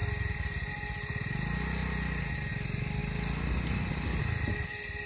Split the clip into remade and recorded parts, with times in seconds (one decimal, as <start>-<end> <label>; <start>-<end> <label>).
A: 0.0-5.1 recorded